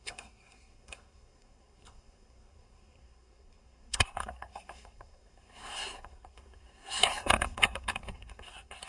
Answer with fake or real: fake